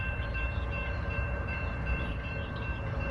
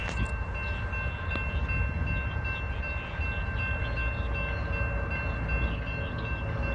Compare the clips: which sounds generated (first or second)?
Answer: first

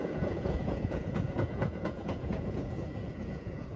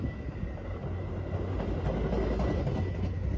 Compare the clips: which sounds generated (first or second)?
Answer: first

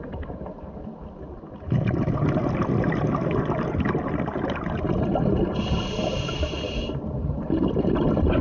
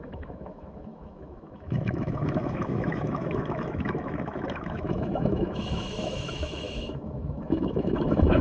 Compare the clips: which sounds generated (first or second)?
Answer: second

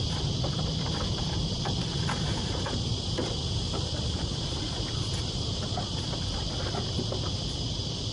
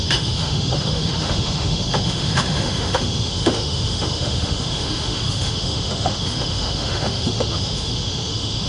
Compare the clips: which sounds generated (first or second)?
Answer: second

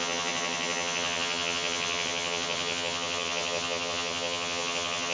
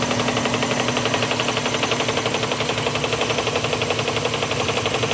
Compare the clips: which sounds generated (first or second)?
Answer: first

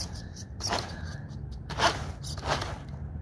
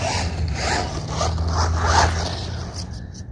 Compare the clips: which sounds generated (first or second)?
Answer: first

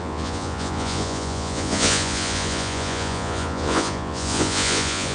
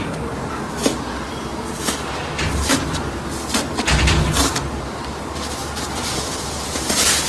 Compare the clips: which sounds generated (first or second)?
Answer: first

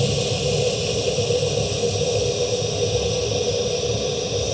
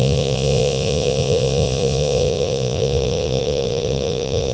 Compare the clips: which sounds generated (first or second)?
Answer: second